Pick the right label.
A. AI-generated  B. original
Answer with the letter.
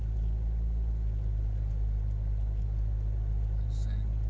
B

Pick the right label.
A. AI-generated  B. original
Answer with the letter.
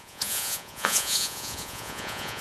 A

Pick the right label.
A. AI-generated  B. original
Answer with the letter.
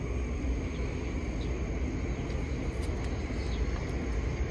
B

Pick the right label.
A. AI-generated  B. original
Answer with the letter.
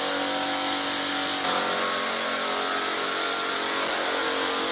B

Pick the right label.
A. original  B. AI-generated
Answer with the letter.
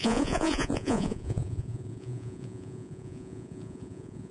B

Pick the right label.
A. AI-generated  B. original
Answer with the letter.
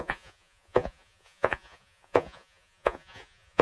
A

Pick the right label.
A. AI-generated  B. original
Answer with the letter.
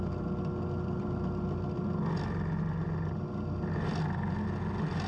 B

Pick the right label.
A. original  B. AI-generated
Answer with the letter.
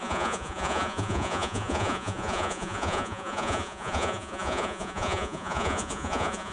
B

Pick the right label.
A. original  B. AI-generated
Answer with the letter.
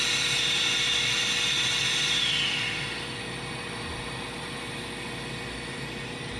A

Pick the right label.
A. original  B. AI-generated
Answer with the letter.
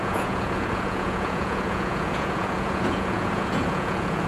B